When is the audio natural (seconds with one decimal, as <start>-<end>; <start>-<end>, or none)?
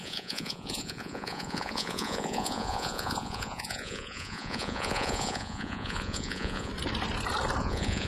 6.7-7.6